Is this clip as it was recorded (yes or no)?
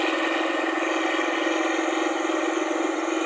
yes